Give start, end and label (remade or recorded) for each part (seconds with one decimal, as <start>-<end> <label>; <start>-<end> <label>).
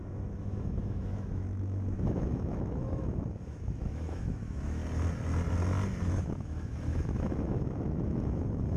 0.0-4.8 remade; 4.8-6.2 recorded; 6.2-8.8 remade